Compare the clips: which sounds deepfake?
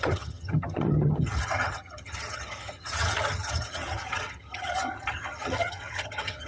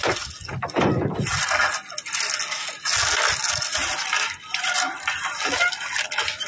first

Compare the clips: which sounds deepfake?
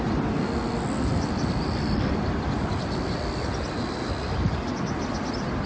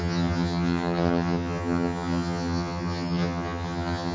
second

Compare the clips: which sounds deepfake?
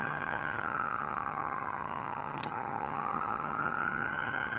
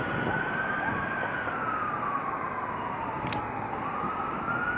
first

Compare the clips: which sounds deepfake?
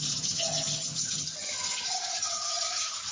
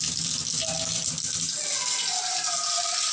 first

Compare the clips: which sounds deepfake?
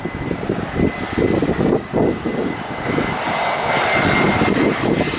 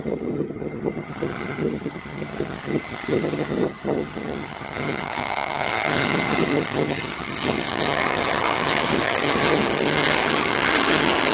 second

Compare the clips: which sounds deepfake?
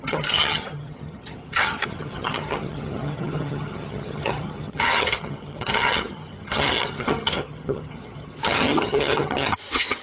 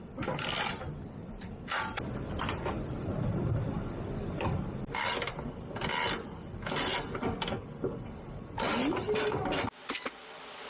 first